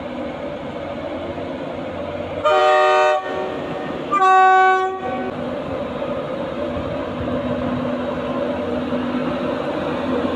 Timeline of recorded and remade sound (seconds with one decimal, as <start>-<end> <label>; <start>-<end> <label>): 0.0-10.4 recorded